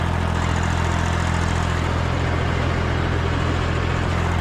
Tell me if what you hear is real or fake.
real